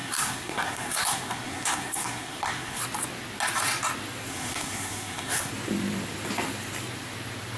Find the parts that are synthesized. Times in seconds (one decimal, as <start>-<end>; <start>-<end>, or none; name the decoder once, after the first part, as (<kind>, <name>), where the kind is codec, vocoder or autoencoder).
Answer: 0.0-2.8 (codec, SNAC); 4.3-5.5